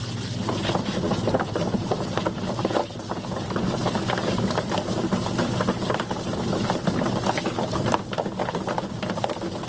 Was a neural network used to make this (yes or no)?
no